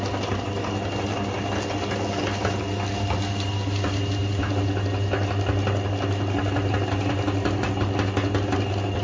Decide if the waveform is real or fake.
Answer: real